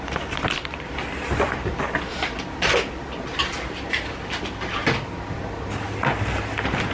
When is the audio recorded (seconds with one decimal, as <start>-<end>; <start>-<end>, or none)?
4.8-6.9